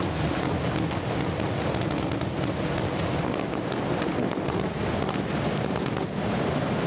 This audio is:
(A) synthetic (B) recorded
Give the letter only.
B